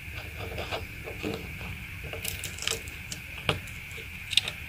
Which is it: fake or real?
real